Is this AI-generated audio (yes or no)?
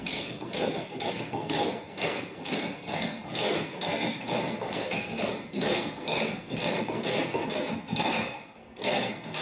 yes